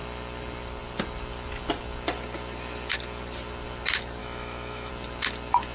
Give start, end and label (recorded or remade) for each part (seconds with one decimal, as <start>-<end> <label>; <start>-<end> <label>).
0.0-4.2 recorded; 4.2-4.9 remade; 4.9-5.7 recorded

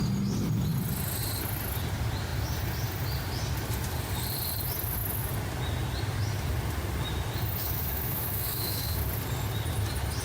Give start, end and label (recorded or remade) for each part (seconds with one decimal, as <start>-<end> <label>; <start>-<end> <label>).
0.0-7.6 recorded; 7.6-9.0 remade; 9.0-10.2 recorded

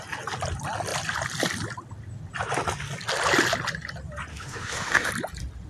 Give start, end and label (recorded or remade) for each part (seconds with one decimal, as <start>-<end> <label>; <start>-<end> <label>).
0.0-4.3 recorded; 4.3-5.1 remade; 5.1-5.7 recorded